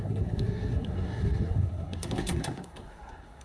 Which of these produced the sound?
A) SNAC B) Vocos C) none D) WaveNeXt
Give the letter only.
A